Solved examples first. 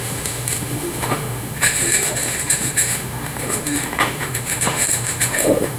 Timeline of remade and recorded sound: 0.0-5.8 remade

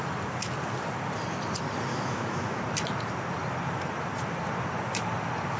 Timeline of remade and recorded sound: 0.0-1.9 recorded; 1.9-2.6 remade; 2.6-5.6 recorded

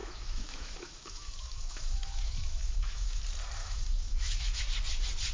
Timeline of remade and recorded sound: 0.0-3.2 remade; 3.2-3.6 recorded; 3.6-4.6 remade; 4.6-5.3 recorded

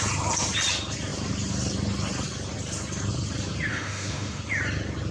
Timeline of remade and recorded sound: 0.0-3.7 recorded; 3.7-4.4 remade; 4.4-5.1 recorded

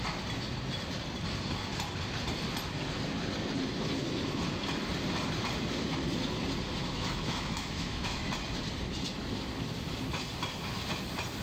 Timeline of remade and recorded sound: 0.0-6.8 recorded; 6.8-8.3 remade; 8.3-11.4 recorded

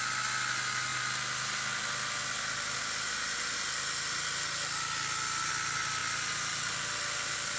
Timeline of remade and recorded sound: 0.0-7.6 recorded

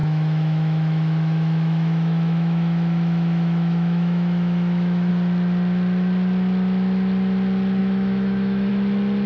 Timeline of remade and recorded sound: 0.0-5.1 remade; 5.1-7.8 recorded; 7.8-8.7 remade; 8.7-9.3 recorded